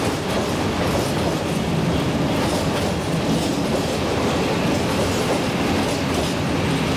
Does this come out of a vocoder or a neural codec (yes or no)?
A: no